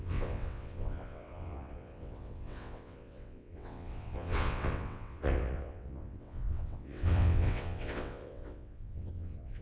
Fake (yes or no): yes